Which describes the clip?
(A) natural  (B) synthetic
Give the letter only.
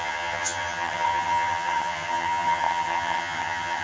B